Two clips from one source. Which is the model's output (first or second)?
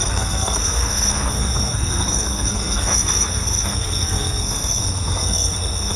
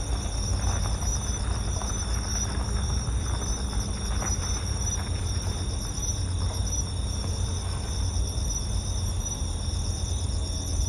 first